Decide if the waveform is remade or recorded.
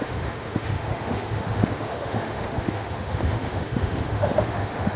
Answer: remade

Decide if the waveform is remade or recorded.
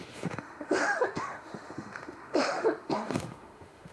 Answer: remade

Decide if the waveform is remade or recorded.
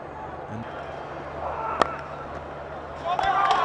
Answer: recorded